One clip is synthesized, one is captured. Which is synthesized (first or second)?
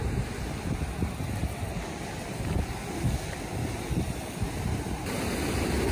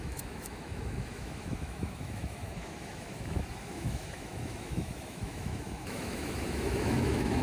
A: second